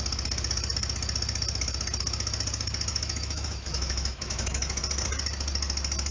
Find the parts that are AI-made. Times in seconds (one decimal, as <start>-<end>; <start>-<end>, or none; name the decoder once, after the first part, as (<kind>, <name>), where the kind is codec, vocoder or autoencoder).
2.9-4.8 (autoencoder, DAC-VAE)